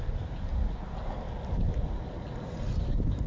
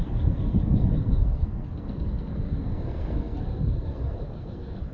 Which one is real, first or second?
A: first